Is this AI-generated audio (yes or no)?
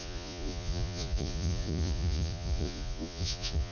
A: yes